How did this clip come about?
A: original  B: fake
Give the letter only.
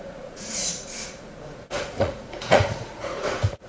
B